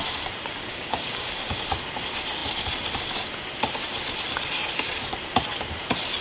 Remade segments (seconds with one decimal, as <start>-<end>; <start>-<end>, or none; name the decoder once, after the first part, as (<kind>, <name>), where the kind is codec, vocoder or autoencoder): 0.7-1.6 (codec, DAC)